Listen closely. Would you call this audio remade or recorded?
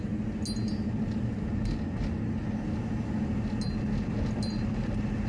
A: recorded